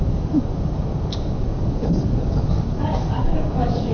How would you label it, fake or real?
fake